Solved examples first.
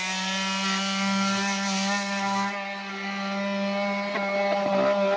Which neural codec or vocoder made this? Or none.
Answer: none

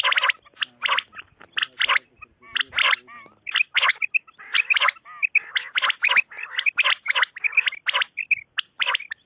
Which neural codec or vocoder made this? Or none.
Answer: none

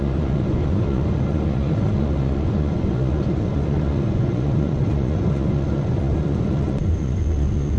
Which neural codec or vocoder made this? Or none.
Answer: vocoder, Vocos